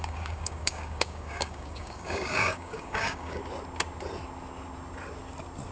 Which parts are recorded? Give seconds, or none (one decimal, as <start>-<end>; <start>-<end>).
3.4-5.7

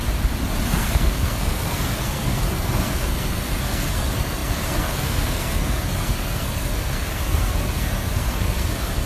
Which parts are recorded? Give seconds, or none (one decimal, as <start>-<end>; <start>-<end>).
0.0-0.7

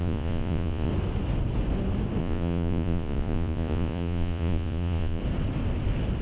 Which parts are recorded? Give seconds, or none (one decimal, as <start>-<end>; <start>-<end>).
0.9-2.2; 5.2-6.2

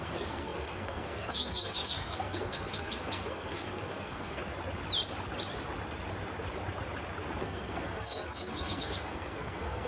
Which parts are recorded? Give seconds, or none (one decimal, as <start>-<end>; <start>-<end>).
4.4-7.4

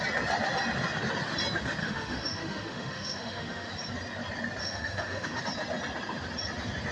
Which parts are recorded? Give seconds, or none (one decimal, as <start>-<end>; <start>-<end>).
0.0-1.8; 3.7-4.6; 5.4-6.9

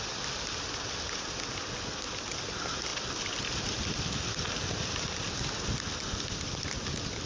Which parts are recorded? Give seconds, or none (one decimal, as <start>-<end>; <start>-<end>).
0.0-7.3